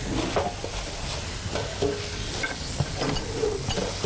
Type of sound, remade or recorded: recorded